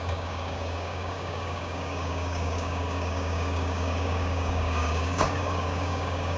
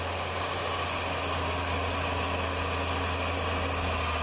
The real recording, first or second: second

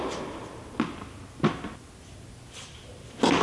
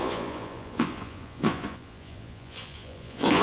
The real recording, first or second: first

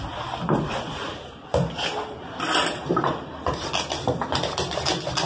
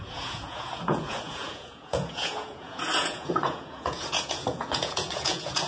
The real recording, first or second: first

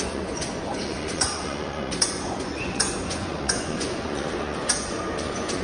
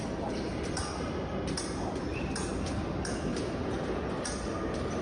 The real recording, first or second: second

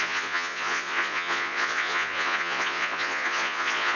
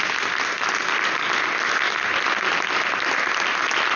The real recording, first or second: second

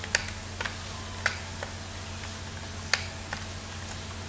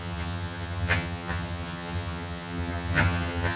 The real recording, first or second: first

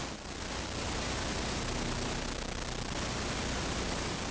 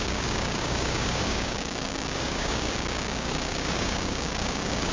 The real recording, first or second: first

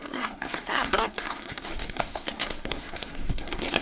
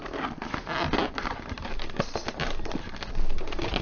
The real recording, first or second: second